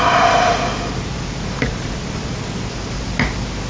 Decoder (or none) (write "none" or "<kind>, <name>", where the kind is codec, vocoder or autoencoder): none